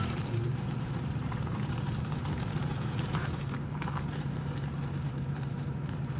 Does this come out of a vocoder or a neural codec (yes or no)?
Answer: yes